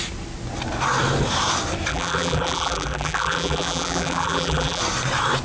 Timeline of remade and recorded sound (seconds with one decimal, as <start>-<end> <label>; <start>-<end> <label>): 0.0-1.9 recorded; 1.9-4.8 remade; 4.8-5.4 recorded